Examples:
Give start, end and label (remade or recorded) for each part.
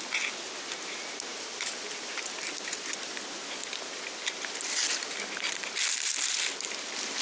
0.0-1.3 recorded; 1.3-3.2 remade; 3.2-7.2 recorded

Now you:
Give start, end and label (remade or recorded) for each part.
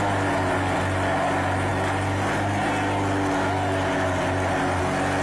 0.0-5.2 recorded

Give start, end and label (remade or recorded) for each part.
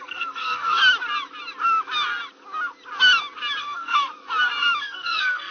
0.0-0.8 remade; 0.8-3.6 recorded; 3.6-4.1 remade; 4.1-4.8 recorded; 4.8-5.5 remade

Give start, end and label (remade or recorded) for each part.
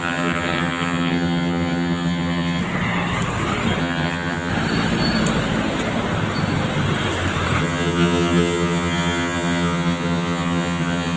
0.0-2.6 remade; 2.6-3.8 recorded; 3.8-4.5 remade; 4.5-7.6 recorded; 7.6-11.2 remade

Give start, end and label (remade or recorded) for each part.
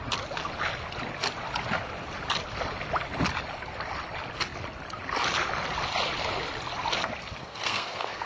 0.0-7.4 recorded; 7.4-8.3 remade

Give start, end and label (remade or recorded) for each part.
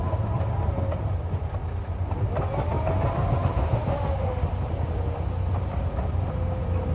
0.0-1.6 remade; 1.6-5.7 recorded; 5.7-6.9 remade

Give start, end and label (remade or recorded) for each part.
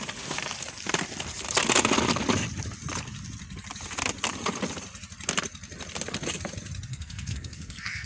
0.0-6.9 recorded; 6.9-8.1 remade